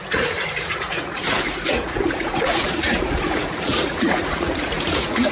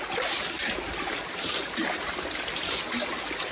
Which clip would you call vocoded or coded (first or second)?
first